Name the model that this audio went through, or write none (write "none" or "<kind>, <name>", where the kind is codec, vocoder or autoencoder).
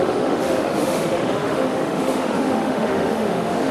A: autoencoder, DAC-VAE